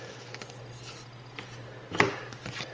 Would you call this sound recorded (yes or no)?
yes